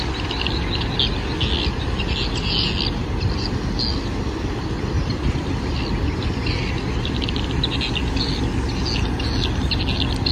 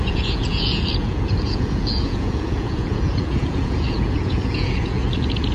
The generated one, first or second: second